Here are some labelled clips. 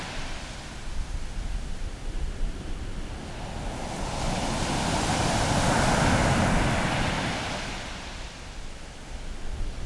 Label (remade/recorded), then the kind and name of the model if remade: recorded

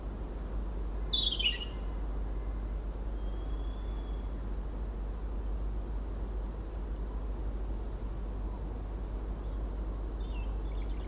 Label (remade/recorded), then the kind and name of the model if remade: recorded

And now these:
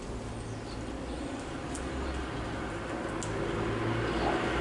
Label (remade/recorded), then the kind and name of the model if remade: recorded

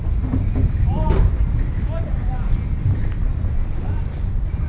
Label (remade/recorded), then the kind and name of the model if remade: recorded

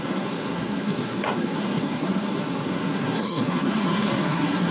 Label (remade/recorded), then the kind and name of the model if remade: remade, codec, SNAC